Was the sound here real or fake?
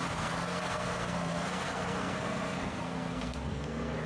fake